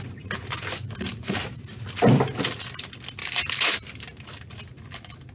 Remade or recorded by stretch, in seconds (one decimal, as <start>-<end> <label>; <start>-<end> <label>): 0.0-1.1 recorded; 1.1-1.7 remade; 1.7-3.2 recorded; 3.2-4.4 remade; 4.4-5.3 recorded